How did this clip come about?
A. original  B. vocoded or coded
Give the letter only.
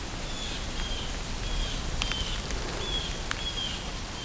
A